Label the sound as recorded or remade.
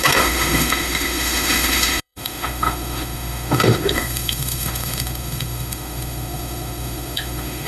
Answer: remade